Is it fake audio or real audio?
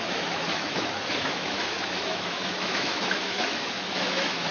fake